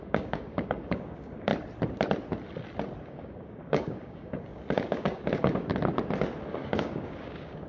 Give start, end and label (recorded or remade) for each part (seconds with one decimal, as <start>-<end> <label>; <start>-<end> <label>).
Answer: 0.0-1.5 remade; 1.5-3.0 recorded; 3.0-5.7 remade; 5.7-6.5 recorded; 6.5-7.7 remade